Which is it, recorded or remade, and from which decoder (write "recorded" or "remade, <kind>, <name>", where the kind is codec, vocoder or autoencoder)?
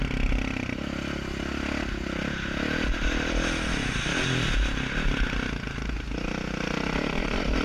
recorded